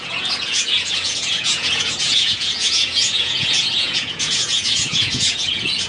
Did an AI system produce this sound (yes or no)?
yes